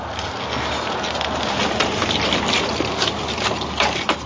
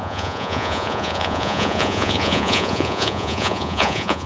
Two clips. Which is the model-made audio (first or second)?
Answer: second